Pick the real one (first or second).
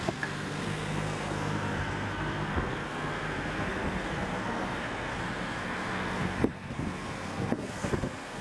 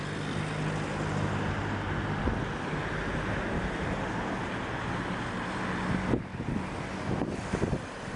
second